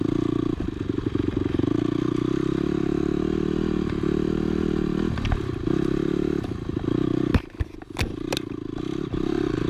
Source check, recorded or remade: recorded